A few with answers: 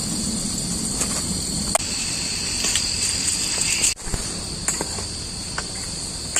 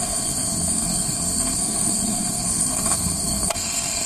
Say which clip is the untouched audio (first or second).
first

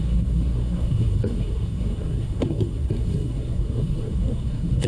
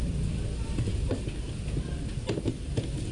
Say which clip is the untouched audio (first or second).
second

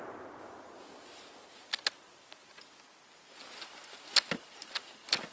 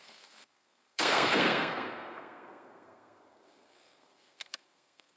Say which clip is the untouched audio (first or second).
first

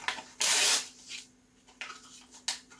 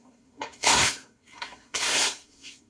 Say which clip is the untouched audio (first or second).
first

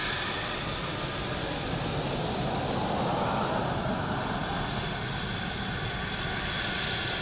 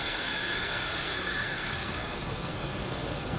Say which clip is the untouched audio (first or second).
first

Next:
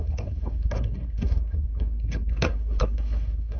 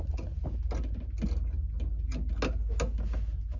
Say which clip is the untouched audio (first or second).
second